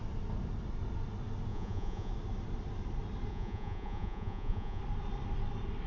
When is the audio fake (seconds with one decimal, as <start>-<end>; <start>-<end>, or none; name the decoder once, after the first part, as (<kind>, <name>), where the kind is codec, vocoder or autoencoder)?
1.5-2.1 (vocoder, Vocos); 3.3-4.8